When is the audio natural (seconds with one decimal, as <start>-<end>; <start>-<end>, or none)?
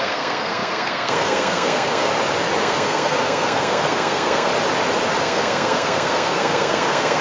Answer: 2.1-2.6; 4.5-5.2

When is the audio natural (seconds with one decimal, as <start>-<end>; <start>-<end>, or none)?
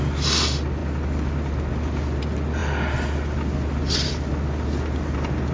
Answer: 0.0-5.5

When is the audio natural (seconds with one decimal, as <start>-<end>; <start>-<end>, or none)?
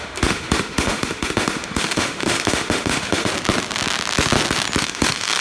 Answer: 3.3-4.8